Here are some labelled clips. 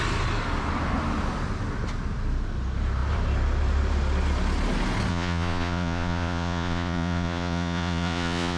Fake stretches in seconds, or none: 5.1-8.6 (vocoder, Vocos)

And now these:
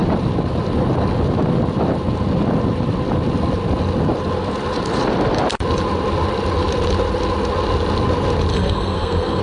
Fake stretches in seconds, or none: 8.5-9.4 (codec, SNAC)

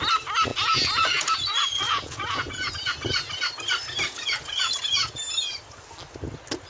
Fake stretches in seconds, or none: 0.5-2.7 (vocoder, Vocos); 4.1-5.2

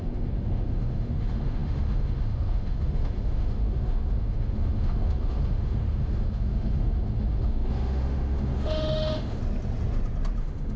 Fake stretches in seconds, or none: 0.0-9.4 (autoencoder, DAC-VAE); 10.4-10.8

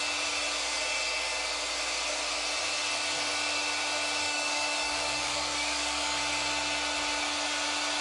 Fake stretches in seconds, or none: 4.2-6.2 (codec, DAC)